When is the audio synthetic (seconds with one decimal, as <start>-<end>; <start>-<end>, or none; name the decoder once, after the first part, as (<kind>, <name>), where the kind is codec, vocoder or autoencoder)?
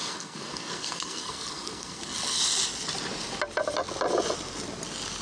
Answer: 0.0-2.4 (codec, SNAC)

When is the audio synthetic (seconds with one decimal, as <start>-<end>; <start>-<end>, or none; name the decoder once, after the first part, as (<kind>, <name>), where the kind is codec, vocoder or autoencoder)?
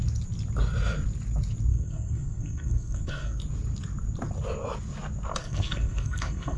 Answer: 1.7-3.4 (codec, SNAC); 5.4-6.6